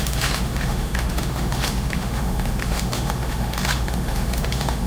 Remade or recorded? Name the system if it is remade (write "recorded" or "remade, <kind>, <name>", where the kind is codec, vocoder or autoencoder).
remade, autoencoder, DAC-VAE